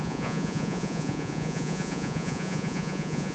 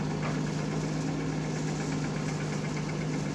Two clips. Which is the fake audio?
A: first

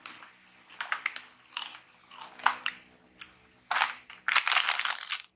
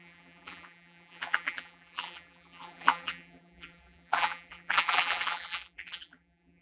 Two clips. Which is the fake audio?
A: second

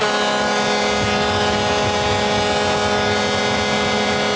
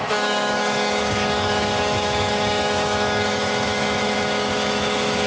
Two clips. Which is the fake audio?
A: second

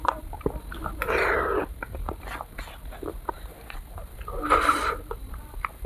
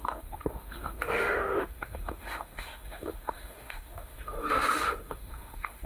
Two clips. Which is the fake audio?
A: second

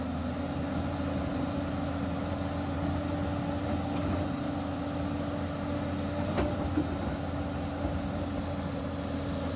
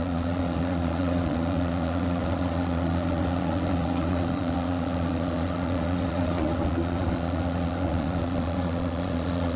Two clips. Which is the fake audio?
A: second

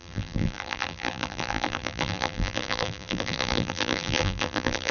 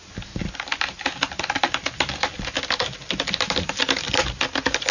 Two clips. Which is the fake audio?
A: first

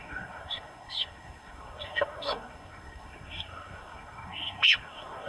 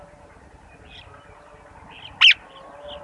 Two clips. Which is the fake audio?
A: first